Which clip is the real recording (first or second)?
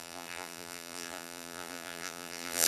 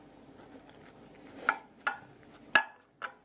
second